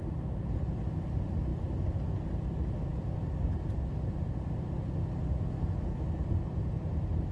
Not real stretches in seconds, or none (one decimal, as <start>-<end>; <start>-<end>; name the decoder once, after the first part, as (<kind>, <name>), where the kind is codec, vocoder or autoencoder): none